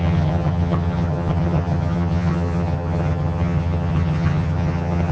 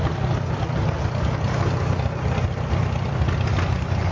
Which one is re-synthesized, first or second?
first